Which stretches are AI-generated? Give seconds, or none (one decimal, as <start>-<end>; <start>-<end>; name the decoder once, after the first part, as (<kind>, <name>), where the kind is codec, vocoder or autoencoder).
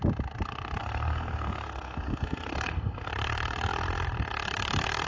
0.8-3.1 (codec, SNAC)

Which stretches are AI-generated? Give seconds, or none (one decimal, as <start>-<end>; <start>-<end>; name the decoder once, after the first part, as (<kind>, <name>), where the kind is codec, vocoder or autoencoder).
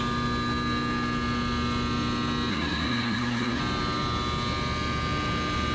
2.5-3.6 (codec, SNAC)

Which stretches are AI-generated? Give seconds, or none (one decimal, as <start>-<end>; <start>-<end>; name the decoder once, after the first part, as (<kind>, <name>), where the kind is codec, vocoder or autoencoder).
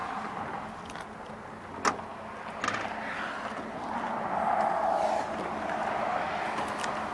none